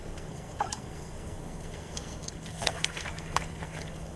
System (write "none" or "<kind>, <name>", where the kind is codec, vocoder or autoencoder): codec, SNAC